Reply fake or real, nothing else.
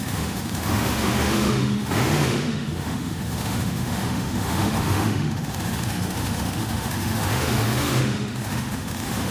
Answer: fake